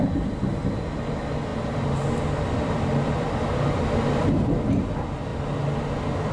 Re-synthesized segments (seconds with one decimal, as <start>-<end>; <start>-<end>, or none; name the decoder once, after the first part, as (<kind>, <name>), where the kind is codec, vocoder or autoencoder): none